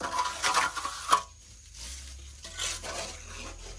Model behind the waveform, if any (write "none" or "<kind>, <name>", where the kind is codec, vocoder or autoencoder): none